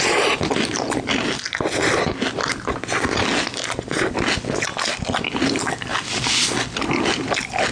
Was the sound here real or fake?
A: real